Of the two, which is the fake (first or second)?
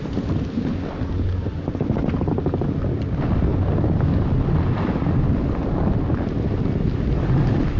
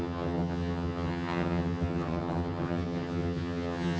second